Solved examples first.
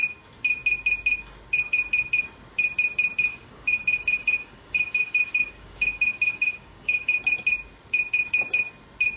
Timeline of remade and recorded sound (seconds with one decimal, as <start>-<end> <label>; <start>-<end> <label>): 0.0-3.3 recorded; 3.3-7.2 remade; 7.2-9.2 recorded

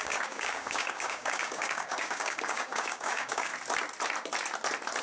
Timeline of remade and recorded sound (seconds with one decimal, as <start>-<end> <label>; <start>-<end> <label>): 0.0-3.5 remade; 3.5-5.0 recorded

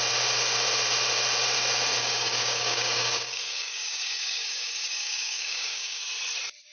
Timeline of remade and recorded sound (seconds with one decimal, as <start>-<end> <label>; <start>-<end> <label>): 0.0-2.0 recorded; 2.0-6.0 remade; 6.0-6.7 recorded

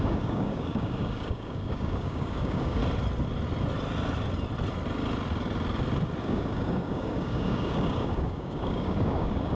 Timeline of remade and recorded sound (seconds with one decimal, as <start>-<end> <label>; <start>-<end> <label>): 0.0-2.8 remade; 2.8-6.2 recorded; 6.2-9.5 remade